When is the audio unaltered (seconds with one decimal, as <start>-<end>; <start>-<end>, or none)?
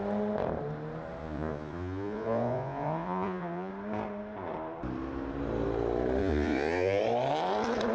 0.0-1.2; 3.7-6.2; 7.0-7.9